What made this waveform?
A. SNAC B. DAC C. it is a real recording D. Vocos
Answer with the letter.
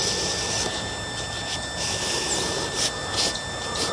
C